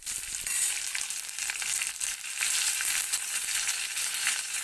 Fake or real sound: real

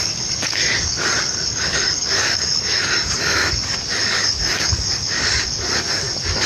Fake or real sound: fake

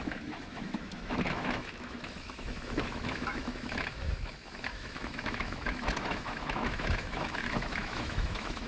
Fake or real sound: fake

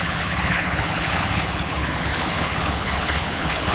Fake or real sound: fake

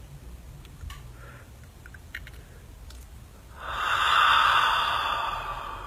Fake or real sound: real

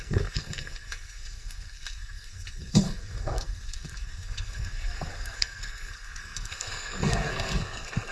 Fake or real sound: fake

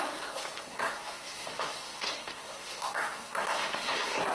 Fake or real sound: fake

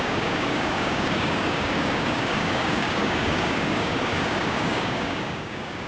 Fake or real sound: fake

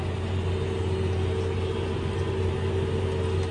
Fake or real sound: real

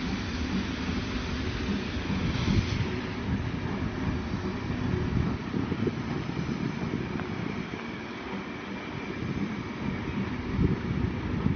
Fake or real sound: real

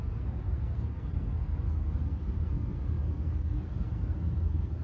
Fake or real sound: fake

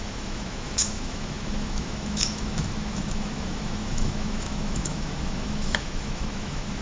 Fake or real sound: fake